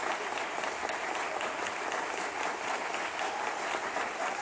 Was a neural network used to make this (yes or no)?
no